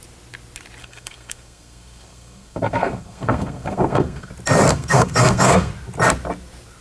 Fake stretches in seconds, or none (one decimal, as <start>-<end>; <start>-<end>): 0.8-4.3; 4.7-5.7